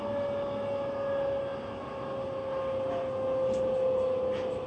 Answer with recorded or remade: recorded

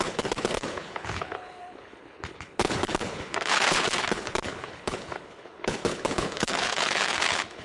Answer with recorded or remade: remade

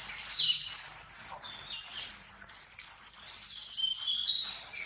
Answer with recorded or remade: remade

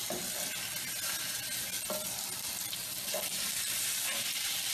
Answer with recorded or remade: recorded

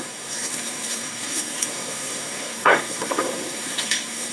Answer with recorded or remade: remade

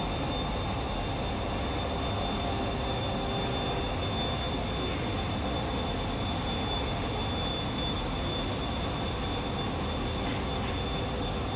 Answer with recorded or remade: recorded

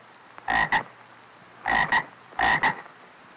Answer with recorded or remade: recorded